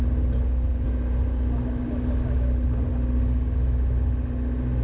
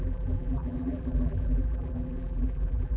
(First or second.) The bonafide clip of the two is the first